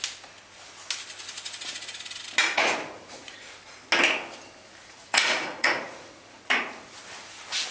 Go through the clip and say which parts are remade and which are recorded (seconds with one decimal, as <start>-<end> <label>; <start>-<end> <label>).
0.0-2.4 recorded; 2.4-3.3 remade; 3.3-4.8 recorded; 4.8-6.9 remade; 6.9-7.7 recorded